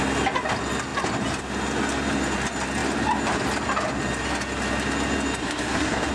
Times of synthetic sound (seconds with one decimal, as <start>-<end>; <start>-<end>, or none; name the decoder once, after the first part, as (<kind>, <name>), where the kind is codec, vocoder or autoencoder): 5.4-6.1 (codec, SNAC)